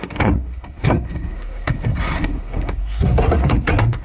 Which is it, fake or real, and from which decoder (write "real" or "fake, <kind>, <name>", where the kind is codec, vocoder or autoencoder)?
fake, codec, SNAC